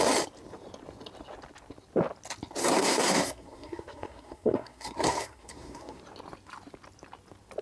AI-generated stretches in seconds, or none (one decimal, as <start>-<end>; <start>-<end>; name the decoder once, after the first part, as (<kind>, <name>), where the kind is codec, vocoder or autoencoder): 2.6-6.0 (codec, SNAC)